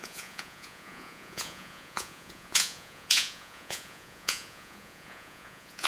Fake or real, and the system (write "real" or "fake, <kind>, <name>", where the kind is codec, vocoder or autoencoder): fake, vocoder, Vocos